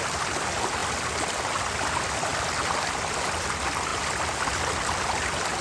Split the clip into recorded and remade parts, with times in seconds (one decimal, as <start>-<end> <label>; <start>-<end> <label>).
0.0-5.6 recorded